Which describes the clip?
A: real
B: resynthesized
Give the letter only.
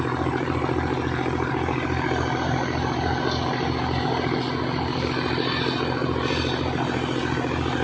A